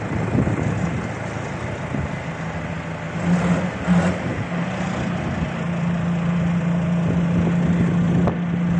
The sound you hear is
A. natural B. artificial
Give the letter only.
A